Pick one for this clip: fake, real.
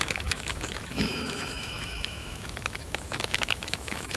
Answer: fake